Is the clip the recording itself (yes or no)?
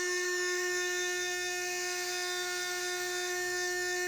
no